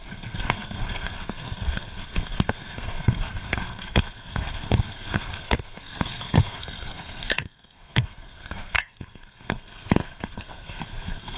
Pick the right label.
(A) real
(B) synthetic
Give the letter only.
B